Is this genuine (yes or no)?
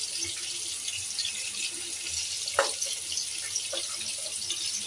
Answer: yes